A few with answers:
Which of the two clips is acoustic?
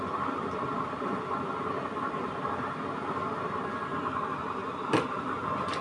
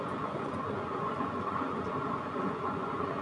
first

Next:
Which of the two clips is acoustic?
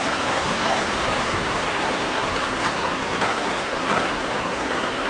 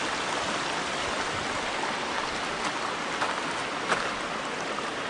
second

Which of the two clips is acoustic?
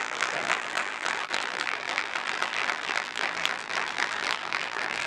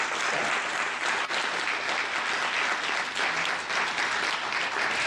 second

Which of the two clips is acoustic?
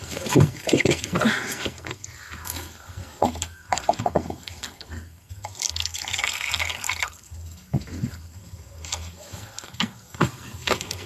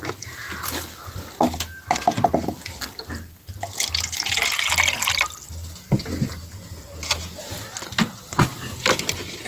second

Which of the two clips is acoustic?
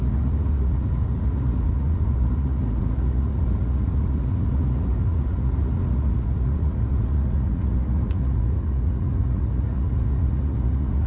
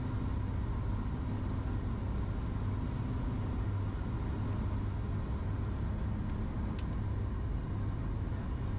second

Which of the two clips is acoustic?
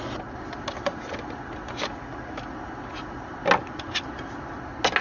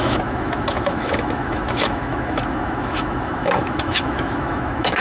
first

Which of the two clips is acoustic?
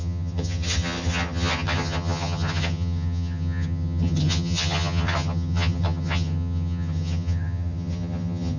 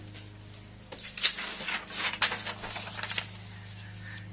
second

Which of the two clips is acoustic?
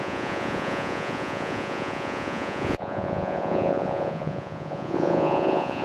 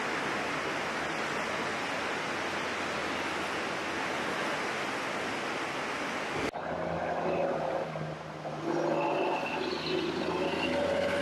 second